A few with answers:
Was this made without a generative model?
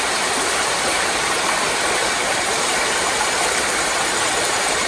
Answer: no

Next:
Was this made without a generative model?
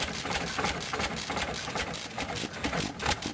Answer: yes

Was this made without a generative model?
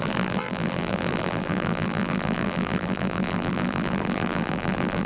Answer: no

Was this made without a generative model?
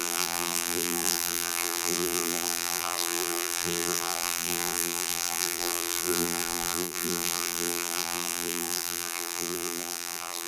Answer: no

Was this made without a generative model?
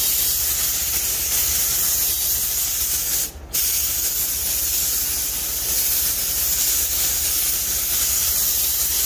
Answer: yes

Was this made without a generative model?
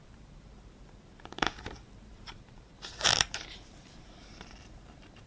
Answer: no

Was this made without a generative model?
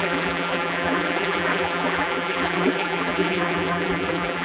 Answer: no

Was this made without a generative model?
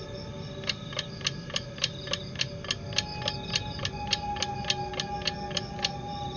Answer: yes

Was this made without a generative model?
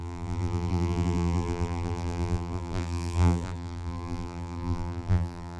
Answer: no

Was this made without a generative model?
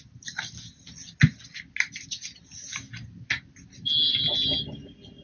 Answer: yes